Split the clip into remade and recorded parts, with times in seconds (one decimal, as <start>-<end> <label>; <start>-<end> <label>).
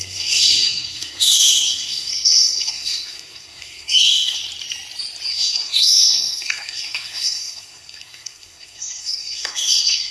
0.0-4.4 remade; 4.4-5.3 recorded; 5.3-10.1 remade